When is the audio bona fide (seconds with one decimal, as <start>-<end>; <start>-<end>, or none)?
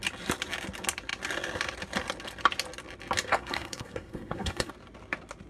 0.0-3.3; 4.7-5.5